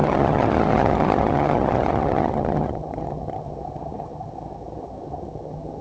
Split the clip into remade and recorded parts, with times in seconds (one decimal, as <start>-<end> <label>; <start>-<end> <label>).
0.0-5.8 remade